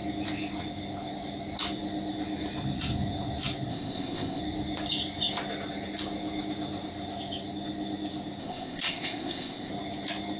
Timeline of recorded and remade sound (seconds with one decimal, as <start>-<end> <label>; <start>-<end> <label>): 0.0-3.7 recorded; 3.7-4.4 remade; 4.4-8.4 recorded; 8.4-9.7 remade; 9.7-10.4 recorded